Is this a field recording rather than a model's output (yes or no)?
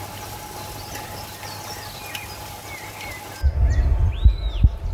yes